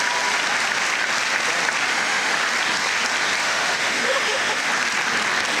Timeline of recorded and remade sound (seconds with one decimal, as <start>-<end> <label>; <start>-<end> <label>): 0.0-1.9 recorded; 1.9-2.4 remade; 2.4-3.4 recorded; 3.4-4.7 remade; 4.7-5.6 recorded